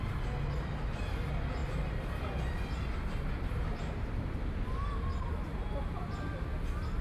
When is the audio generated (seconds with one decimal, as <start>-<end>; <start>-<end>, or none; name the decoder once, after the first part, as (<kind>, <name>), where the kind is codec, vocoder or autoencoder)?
none